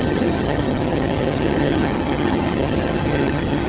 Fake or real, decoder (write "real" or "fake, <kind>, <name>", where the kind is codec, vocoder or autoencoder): fake, vocoder, HiFi-GAN